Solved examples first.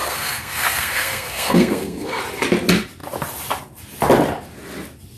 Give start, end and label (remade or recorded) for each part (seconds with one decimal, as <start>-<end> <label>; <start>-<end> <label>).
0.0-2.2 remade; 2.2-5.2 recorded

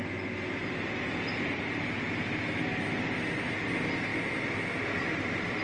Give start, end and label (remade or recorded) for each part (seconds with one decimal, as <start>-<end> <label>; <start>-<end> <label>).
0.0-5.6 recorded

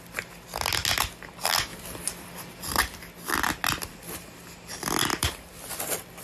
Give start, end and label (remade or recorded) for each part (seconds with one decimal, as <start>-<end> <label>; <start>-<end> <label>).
0.0-5.1 recorded; 5.1-5.8 remade; 5.8-6.2 recorded

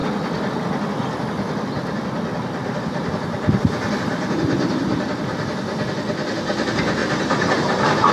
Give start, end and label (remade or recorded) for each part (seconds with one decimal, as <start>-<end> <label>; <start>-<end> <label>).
0.0-2.6 recorded; 2.6-5.0 remade; 5.0-7.0 recorded; 7.0-8.1 remade